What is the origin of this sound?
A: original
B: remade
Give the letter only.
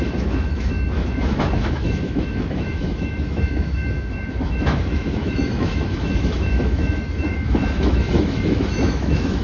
B